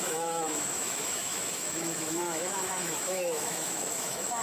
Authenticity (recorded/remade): remade